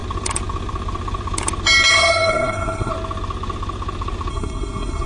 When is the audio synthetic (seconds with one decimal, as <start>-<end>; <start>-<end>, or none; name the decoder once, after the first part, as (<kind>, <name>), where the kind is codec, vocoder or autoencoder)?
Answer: 1.9-2.9 (codec, SNAC); 4.3-5.1